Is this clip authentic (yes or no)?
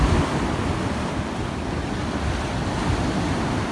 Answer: yes